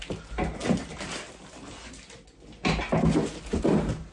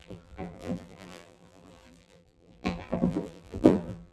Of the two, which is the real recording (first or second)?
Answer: first